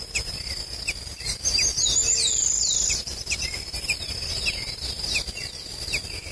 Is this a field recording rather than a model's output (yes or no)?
yes